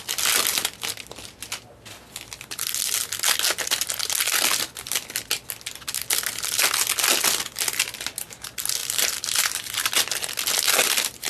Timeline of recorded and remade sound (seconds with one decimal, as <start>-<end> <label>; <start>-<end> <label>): 0.0-8.8 recorded; 8.8-9.7 remade; 9.7-11.3 recorded